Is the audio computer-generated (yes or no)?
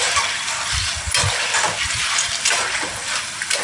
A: no